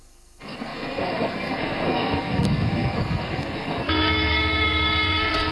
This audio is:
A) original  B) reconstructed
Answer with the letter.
B